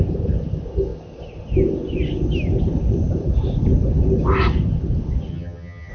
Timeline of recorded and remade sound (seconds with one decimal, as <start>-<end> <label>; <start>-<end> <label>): 0.0-5.3 recorded; 5.3-5.9 remade